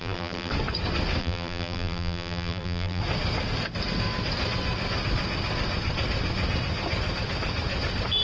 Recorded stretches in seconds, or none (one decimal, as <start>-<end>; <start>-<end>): 0.5-1.2; 3.0-8.2